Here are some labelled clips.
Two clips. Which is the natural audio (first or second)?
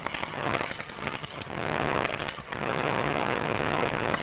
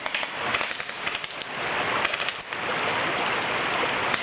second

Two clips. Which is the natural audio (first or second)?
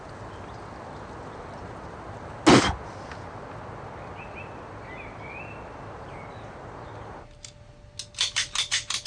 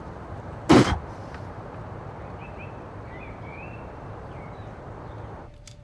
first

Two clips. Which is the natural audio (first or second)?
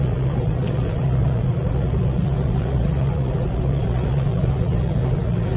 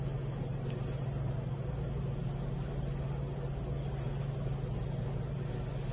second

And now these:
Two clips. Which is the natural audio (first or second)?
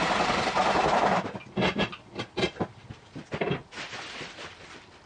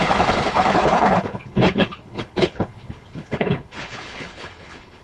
first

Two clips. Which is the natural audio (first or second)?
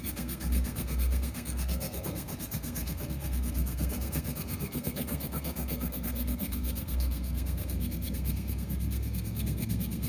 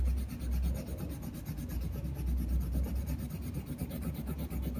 second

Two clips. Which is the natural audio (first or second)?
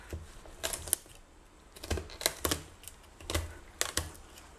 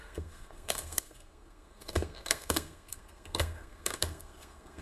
first